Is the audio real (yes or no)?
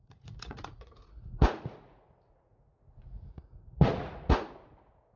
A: no